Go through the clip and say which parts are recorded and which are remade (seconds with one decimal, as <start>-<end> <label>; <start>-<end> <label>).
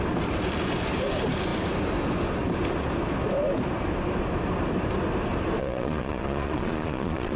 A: 0.0-5.6 recorded; 5.6-7.4 remade